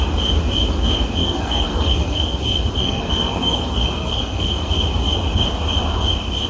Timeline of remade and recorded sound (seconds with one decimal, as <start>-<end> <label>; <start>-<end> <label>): 0.0-1.2 recorded; 1.2-2.4 remade; 2.4-2.8 recorded; 2.8-4.7 remade; 4.7-6.5 recorded